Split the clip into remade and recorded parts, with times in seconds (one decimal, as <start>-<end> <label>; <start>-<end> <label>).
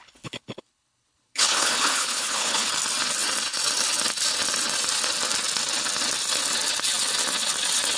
0.0-2.7 remade; 2.7-8.0 recorded